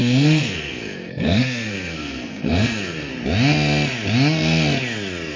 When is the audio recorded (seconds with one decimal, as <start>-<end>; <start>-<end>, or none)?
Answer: 3.1-5.4